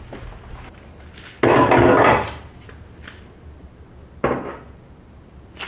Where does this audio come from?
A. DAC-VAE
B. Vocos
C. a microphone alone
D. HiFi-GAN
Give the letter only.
C